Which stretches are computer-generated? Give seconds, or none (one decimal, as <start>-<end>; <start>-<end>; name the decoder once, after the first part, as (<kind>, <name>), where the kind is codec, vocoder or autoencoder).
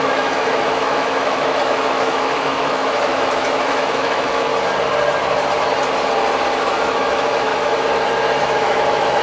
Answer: 0.0-4.5 (autoencoder, DAC-VAE); 6.6-7.5; 8.4-9.2